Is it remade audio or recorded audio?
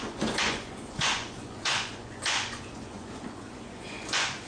remade